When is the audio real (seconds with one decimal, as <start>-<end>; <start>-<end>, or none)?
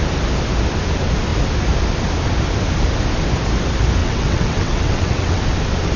0.0-4.0; 5.4-6.0